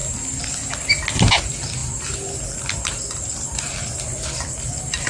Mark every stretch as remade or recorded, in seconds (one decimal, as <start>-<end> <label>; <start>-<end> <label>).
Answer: 0.0-5.1 recorded